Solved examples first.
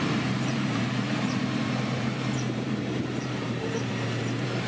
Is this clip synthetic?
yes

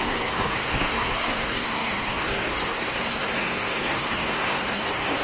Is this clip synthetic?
yes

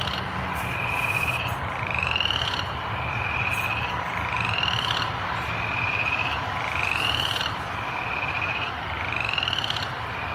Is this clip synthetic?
no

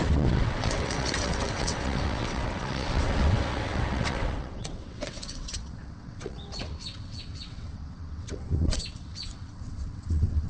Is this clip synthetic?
yes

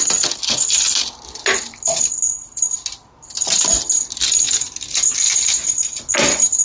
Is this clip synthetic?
no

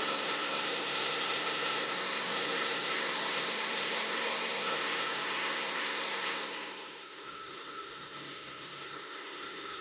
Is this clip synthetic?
yes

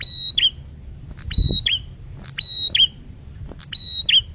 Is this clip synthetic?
no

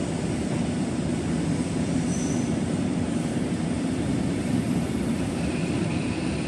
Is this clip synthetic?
yes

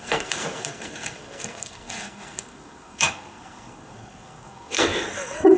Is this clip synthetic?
yes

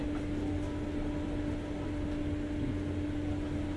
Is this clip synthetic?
no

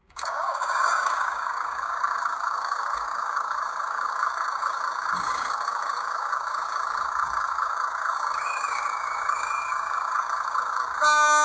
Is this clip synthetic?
yes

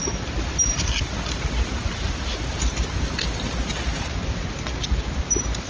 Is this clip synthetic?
no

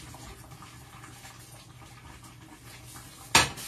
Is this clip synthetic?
no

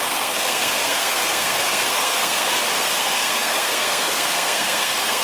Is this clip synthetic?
yes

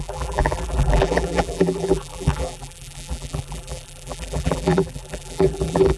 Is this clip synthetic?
yes